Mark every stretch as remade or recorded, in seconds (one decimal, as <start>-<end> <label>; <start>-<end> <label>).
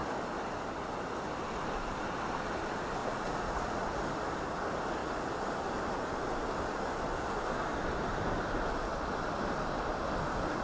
0.0-3.0 recorded; 3.0-3.9 remade; 3.9-10.6 recorded